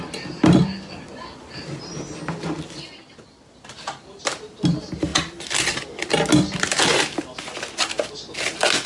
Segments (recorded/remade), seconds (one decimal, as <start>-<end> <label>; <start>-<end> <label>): 0.0-8.9 recorded